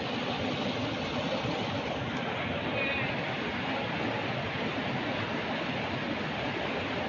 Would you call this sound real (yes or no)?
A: yes